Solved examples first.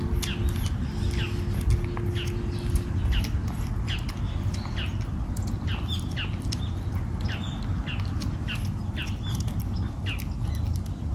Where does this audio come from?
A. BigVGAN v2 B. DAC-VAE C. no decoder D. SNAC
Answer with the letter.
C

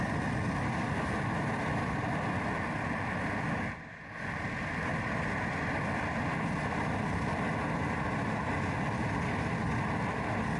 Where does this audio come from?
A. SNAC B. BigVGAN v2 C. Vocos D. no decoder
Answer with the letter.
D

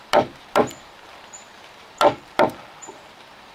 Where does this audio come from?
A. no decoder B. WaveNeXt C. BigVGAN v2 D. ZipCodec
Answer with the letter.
C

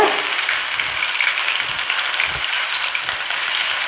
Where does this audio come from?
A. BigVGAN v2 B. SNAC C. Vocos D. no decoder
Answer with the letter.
D